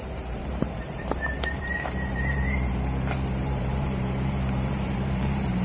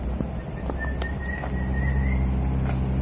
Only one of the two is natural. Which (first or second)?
second